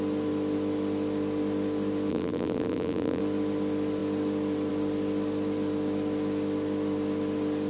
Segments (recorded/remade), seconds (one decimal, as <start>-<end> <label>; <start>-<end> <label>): 0.0-2.1 recorded; 2.1-3.2 remade; 3.2-7.7 recorded